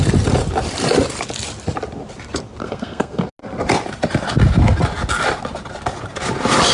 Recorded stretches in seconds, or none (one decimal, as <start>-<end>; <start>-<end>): 0.0-2.6; 3.3-6.7